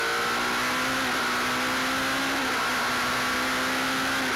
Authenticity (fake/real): real